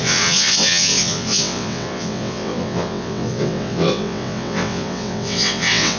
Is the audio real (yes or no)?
no